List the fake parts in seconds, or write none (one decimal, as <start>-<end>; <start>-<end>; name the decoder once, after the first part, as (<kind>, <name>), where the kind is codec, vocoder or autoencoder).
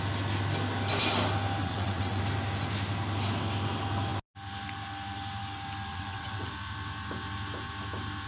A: 1.6-2.2 (vocoder, WaveNeXt); 5.9-6.5